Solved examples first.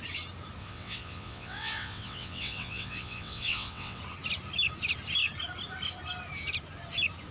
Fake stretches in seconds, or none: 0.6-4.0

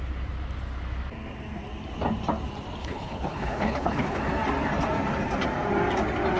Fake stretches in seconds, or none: 2.8-4.2

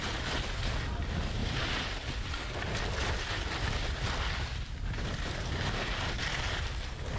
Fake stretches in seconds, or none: none

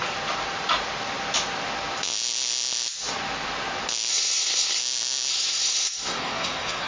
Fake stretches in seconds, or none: 4.1-4.8; 5.3-6.9

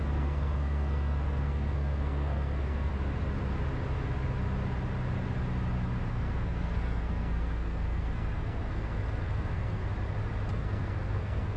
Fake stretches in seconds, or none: 0.0-2.9; 6.1-9.8; 10.5-11.6

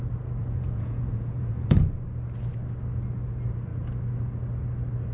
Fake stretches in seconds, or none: 0.4-1.9

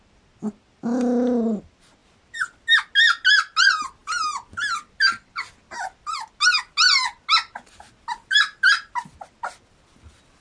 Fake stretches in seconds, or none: none